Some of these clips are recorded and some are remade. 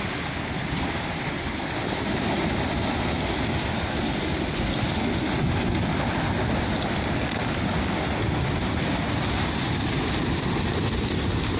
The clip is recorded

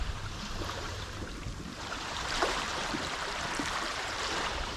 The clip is remade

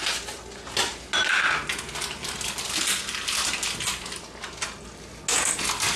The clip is recorded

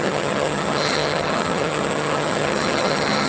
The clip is remade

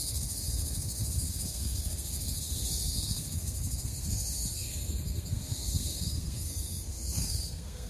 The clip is remade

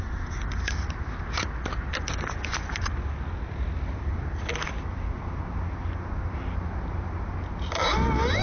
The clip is recorded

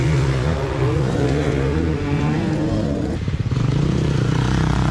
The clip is remade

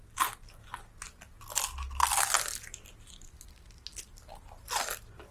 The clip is recorded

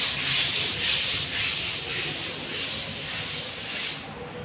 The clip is recorded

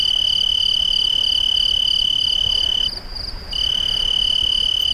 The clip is recorded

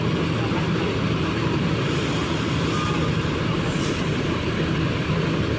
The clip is recorded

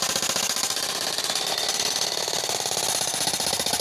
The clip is recorded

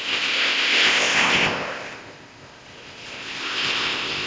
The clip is remade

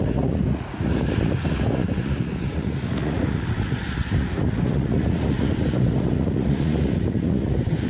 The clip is remade